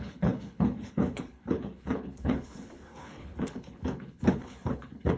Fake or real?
fake